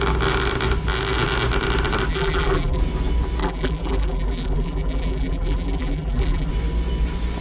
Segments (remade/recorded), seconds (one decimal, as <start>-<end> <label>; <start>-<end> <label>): 0.0-2.1 recorded; 2.1-2.8 remade; 2.8-3.4 recorded; 3.4-6.5 remade; 6.5-7.4 recorded